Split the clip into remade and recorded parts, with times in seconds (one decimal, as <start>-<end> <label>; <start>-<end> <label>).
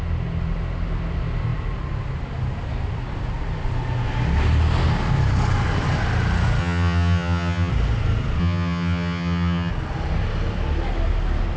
0.0-6.6 recorded; 6.6-7.7 remade; 7.7-8.4 recorded; 8.4-9.7 remade; 9.7-11.6 recorded